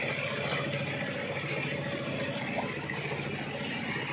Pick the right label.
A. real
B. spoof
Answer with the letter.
A